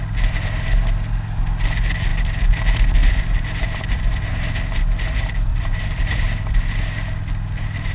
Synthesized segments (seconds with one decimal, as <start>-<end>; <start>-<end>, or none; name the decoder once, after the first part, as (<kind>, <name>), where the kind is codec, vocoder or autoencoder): 3.0-4.2 (vocoder, BigVGAN v2); 5.5-6.2